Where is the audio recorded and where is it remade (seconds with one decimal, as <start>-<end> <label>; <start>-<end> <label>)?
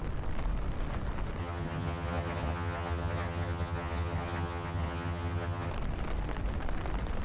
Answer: 0.0-1.4 recorded; 1.4-5.7 remade; 5.7-7.2 recorded